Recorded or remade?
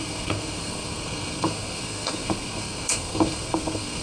remade